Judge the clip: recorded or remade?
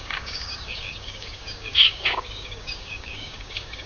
remade